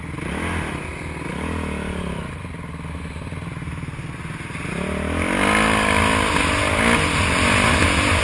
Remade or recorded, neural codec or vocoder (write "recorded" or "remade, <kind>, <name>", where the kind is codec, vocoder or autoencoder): recorded